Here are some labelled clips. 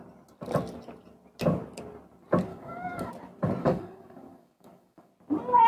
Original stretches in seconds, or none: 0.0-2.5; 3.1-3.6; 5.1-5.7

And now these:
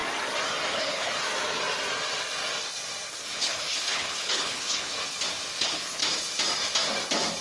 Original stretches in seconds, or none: 0.0-0.7; 1.1-3.1; 4.9-5.6; 6.0-7.4

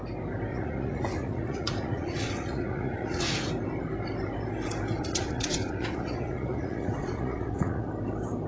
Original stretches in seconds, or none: 0.0-0.5; 3.5-5.0; 7.9-8.5

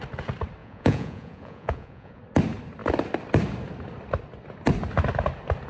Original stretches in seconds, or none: 0.0-0.6; 2.2-5.7

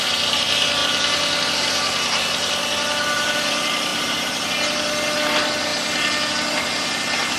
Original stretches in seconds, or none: 0.0-3.9; 4.5-7.4

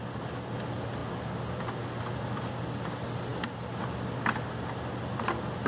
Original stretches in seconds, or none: 0.0-5.7